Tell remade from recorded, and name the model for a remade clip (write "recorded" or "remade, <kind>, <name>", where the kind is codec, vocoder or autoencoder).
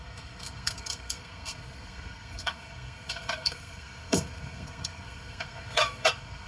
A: remade, codec, SNAC